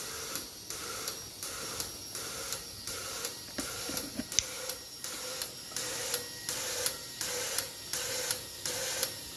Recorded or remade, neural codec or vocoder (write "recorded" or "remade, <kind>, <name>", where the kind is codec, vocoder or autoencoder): recorded